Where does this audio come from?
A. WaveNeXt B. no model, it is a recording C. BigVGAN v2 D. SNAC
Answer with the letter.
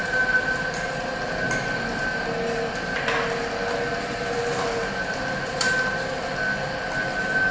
B